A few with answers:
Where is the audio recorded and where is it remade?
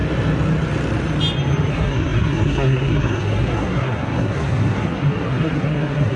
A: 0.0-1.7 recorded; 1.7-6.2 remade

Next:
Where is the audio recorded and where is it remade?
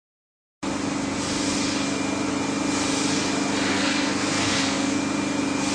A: 0.0-3.7 recorded; 3.7-5.0 remade; 5.0-5.7 recorded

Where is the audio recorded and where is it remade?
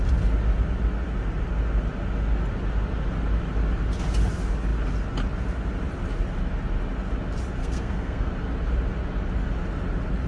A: 0.0-7.6 recorded; 7.6-8.3 remade; 8.3-10.3 recorded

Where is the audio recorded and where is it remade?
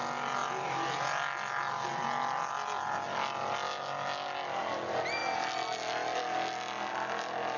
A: 0.0-7.6 recorded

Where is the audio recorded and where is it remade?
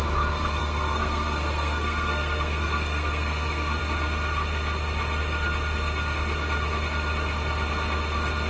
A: 0.0-0.6 recorded; 0.6-3.8 remade; 3.8-8.5 recorded